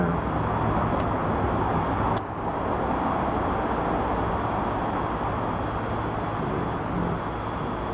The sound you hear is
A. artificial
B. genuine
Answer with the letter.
B